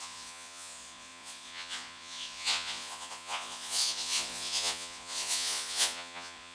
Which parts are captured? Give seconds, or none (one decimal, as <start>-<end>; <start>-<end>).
none